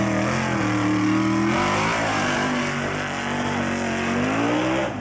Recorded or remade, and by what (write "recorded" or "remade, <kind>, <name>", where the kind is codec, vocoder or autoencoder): recorded